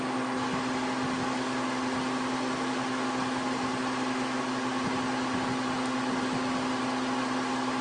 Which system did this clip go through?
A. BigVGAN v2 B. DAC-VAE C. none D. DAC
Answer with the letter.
C